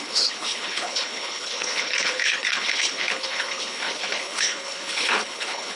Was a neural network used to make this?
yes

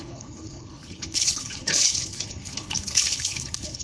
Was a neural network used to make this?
yes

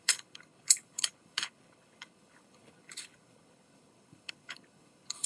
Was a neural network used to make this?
yes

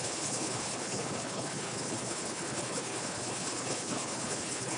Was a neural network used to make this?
yes